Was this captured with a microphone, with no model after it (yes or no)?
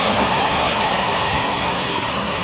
no